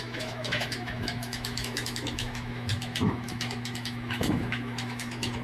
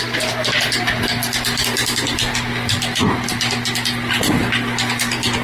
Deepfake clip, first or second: first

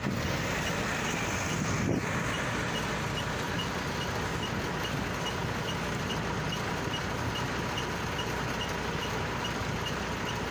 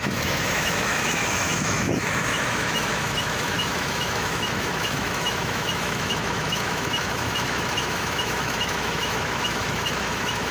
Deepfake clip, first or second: second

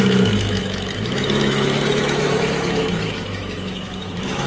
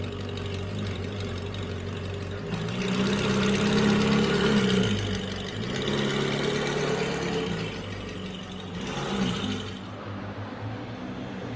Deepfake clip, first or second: first